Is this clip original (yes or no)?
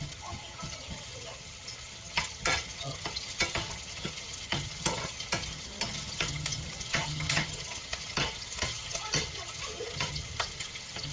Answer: no